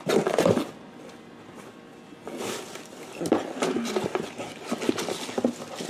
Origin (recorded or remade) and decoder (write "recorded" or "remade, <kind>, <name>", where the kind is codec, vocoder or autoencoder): recorded